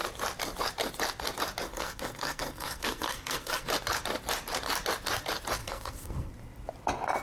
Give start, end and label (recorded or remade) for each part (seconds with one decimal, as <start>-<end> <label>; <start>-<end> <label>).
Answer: 0.0-1.7 recorded; 1.7-3.7 remade; 3.7-5.6 recorded; 5.6-6.3 remade; 6.3-7.2 recorded